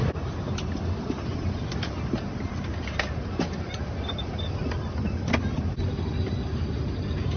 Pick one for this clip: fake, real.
real